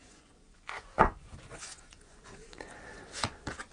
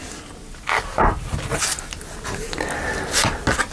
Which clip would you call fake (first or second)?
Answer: first